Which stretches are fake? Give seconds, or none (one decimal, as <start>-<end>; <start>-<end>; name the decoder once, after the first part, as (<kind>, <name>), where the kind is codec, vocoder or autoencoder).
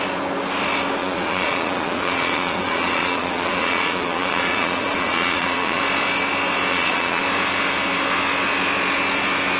1.0-5.8 (vocoder, Vocos); 6.7-7.2